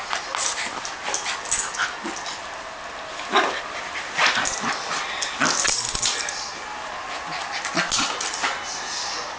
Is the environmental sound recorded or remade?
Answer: recorded